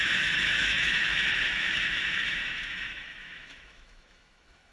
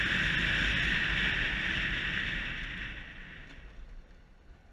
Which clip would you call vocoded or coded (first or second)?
first